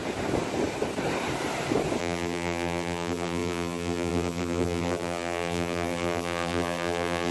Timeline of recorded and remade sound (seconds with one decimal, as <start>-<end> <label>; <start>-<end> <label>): 0.0-2.0 recorded; 2.0-7.3 remade